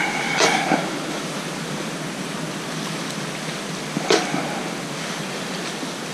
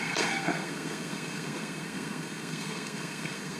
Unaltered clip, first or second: first